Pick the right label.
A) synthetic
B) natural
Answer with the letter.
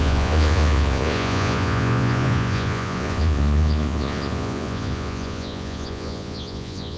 A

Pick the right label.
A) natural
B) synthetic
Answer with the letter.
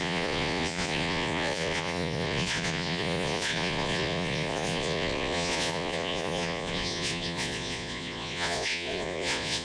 B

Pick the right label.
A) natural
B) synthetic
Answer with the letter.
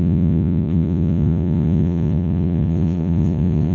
B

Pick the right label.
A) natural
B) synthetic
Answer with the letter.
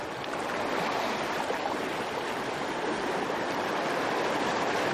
A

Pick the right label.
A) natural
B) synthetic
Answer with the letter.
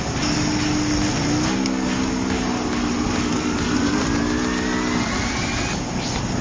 A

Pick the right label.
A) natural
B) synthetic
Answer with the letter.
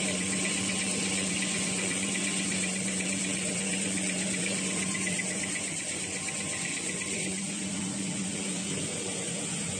B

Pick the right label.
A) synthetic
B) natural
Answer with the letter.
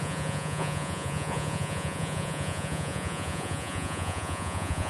A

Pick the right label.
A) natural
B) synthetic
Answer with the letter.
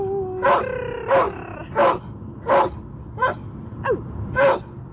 A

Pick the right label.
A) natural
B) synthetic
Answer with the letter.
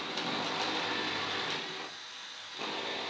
A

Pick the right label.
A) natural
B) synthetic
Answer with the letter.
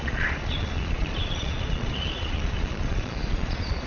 B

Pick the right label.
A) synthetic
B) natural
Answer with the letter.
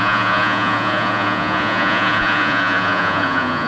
A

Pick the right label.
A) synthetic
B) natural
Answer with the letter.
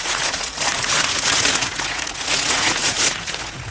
A